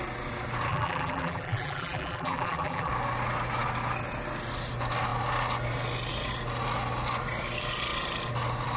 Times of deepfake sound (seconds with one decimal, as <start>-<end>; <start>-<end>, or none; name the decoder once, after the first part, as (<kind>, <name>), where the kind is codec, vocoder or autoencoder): 0.7-2.9 (vocoder, BigVGAN v2)